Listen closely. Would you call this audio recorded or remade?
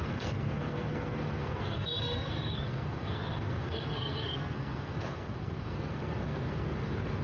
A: remade